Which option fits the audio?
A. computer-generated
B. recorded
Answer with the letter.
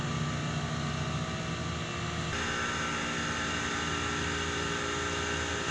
B